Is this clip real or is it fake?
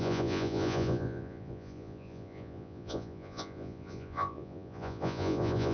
fake